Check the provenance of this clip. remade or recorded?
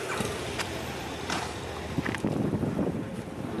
remade